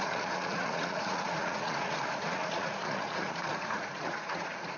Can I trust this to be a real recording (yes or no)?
no